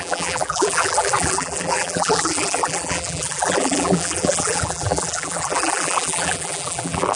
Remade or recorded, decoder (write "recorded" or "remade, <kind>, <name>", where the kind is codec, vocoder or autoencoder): remade, vocoder, BigVGAN v2